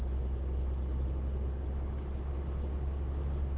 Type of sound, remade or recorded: recorded